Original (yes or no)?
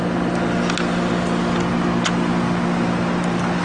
yes